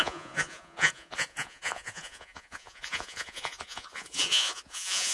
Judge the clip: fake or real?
fake